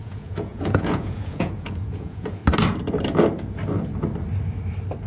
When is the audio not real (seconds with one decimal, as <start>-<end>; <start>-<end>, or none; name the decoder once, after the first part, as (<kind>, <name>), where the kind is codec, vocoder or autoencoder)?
0.0-2.4 (vocoder, Vocos)